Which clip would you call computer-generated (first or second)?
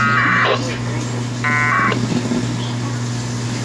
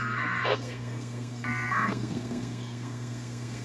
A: second